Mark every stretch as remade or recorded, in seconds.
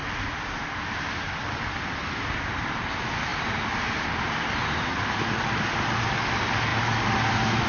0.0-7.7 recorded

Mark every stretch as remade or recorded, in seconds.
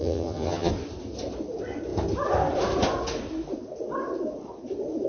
0.0-0.7 remade; 0.7-5.1 recorded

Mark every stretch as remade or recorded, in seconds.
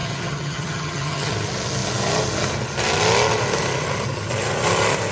0.0-1.3 remade; 1.3-5.1 recorded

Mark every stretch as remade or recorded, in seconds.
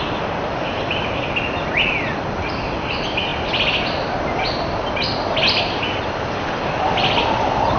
0.0-7.8 recorded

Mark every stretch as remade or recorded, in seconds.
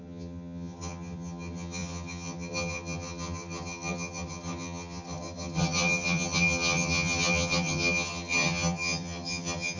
0.0-9.8 remade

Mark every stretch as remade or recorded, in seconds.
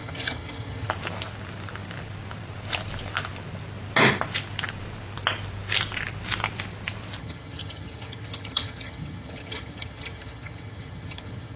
0.0-0.9 remade; 0.9-7.2 recorded; 7.2-11.6 remade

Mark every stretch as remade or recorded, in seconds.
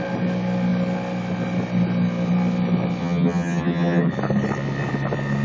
0.0-3.0 recorded; 3.0-4.1 remade; 4.1-5.4 recorded